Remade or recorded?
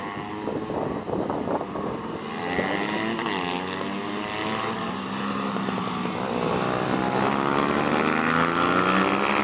recorded